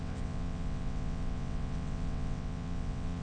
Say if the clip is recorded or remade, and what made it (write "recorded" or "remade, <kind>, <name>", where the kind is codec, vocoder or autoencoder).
remade, vocoder, WaveNeXt